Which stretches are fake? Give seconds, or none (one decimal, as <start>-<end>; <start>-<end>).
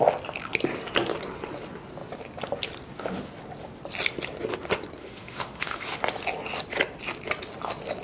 5.0-6.0